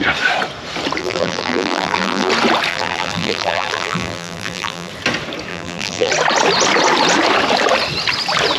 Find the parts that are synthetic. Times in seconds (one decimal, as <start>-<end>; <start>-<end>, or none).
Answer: 1.0-2.3; 2.7-4.9; 5.5-6.1